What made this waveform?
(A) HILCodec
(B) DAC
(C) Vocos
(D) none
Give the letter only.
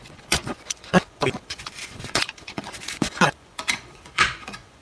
C